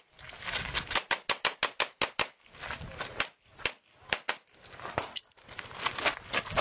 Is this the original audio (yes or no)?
yes